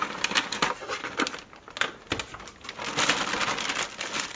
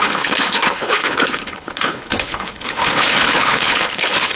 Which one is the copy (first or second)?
second